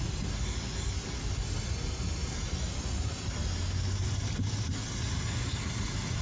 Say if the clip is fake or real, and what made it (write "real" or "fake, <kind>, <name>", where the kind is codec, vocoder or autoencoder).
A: real